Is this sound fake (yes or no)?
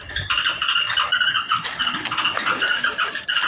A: no